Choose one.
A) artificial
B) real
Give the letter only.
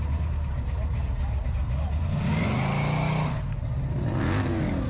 B